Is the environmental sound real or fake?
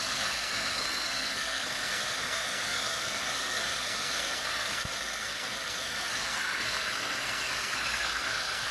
fake